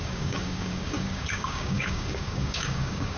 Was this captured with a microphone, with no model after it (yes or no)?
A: no